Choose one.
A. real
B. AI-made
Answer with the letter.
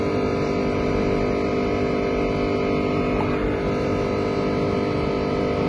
A